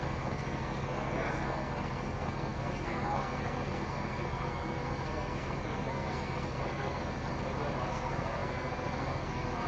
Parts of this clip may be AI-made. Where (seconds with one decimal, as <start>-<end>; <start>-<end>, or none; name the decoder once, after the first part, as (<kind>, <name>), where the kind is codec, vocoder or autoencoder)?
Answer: 0.0-7.3 (codec, SNAC); 7.9-9.7